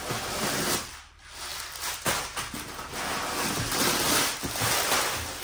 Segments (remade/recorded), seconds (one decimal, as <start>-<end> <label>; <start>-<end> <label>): 0.0-5.4 recorded